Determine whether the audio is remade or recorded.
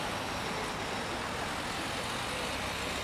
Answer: recorded